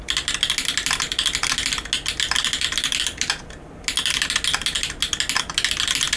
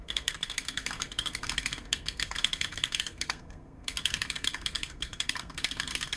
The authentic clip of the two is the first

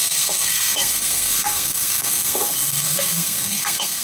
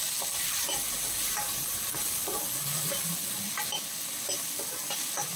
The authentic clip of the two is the second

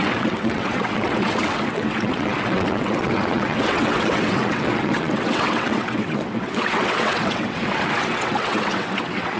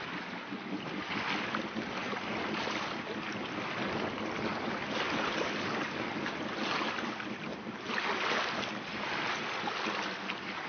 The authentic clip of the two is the second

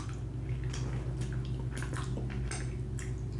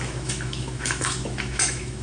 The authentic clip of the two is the first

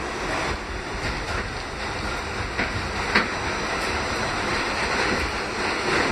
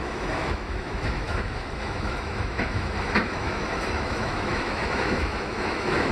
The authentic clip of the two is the first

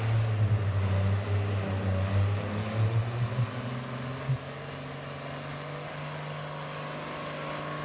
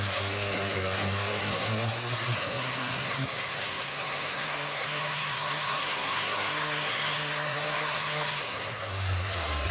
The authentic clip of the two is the first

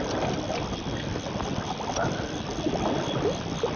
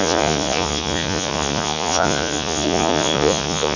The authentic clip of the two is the first